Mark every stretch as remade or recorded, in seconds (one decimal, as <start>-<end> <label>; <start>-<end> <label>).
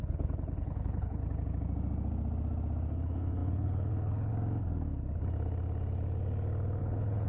0.0-1.2 remade; 1.2-2.9 recorded; 2.9-4.3 remade; 4.3-6.8 recorded; 6.8-7.3 remade